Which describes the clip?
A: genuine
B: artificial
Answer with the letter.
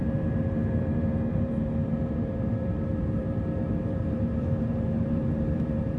B